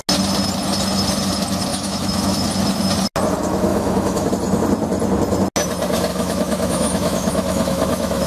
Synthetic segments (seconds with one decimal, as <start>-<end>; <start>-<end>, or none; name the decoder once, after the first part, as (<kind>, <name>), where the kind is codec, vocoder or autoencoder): 1.7-2.5 (autoencoder, DAC-VAE); 3.7-4.3; 6.1-8.3

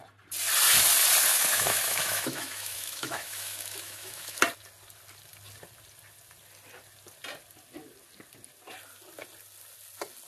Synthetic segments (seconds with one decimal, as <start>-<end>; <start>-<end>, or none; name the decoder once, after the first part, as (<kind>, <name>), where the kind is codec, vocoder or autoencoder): 1.3-4.4 (autoencoder, DAC-VAE)

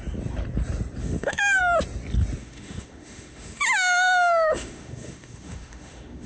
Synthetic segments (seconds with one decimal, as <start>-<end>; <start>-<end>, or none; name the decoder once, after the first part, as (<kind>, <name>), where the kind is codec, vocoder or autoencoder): 1.0-1.6 (autoencoder, DAC-VAE); 2.4-6.3

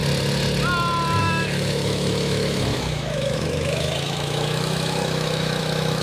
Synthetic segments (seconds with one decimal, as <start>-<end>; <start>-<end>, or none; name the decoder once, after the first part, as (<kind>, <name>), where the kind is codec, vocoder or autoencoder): 1.2-6.0 (autoencoder, DAC-VAE)

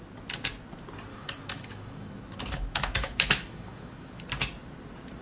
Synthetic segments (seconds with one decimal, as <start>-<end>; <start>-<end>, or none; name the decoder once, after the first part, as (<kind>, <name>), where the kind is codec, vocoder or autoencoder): 1.1-4.2 (autoencoder, DAC-VAE)

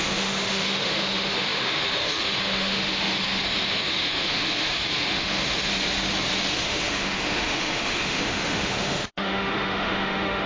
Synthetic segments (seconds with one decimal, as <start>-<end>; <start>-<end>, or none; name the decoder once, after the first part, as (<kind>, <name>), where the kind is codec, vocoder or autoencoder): 0.0-5.7 (autoencoder, DAC-VAE); 6.5-10.5

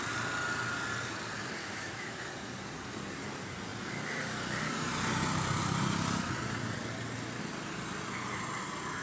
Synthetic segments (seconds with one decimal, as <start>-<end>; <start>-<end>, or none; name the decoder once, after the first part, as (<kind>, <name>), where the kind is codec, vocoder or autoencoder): 1.6-2.2 (autoencoder, DAC-VAE)

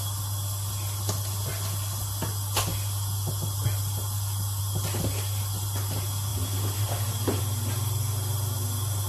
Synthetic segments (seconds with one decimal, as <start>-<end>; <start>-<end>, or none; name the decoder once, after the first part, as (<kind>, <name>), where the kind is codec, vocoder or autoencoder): none